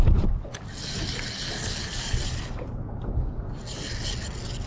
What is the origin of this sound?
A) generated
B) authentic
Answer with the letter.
B